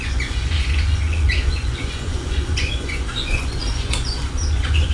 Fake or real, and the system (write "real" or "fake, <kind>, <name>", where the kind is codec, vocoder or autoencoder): fake, vocoder, Vocos